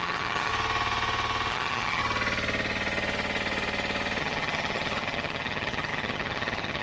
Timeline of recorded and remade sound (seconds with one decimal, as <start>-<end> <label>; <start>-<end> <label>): 0.0-0.5 remade; 0.5-1.5 recorded; 1.5-2.0 remade; 2.0-4.2 recorded; 4.2-6.8 remade